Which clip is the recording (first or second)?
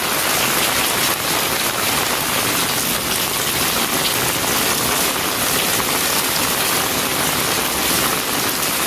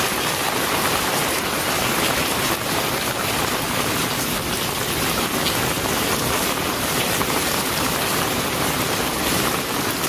first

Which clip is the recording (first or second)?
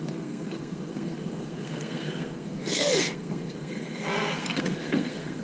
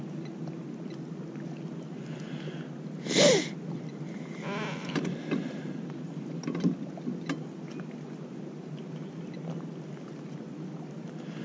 second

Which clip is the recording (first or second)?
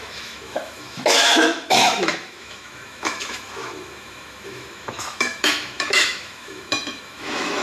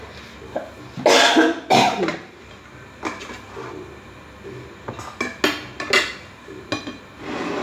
second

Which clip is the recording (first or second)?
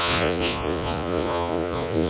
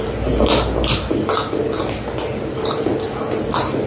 second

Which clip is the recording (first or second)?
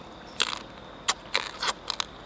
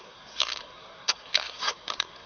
first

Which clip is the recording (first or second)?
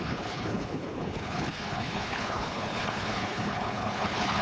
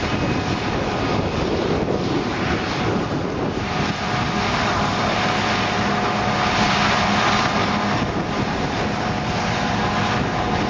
second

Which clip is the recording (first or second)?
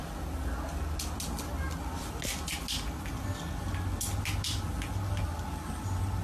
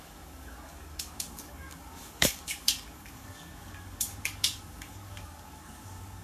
first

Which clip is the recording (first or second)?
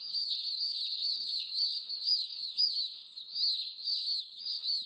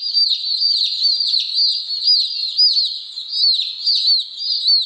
second